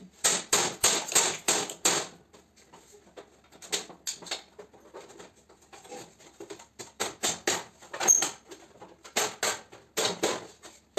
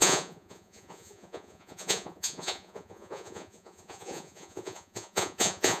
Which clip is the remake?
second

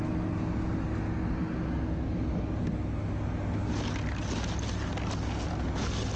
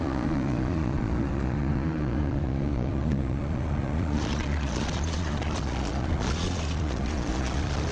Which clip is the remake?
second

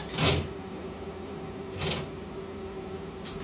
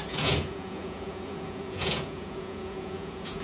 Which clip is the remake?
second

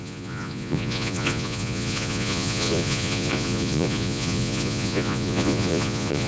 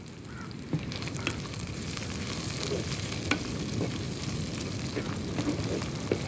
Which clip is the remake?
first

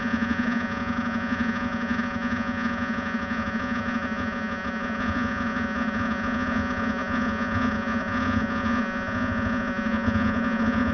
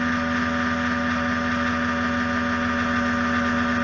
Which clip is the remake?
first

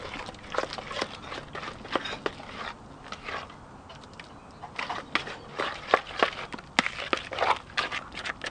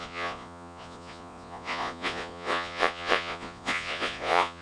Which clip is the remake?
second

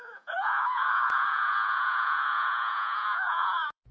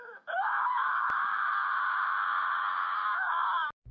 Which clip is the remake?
first